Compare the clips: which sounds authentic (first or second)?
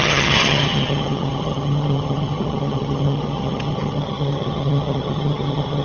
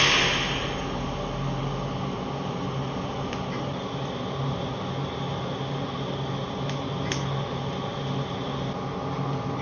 second